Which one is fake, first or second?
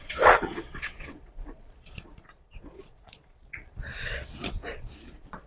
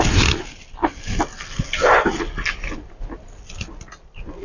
first